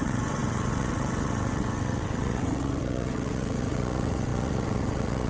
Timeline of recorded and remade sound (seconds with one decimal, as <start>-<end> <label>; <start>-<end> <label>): 0.0-5.3 remade